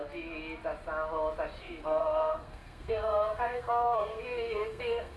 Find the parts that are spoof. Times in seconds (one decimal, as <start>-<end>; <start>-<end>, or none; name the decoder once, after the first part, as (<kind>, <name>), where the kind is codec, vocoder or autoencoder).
1.6-5.2 (codec, SNAC)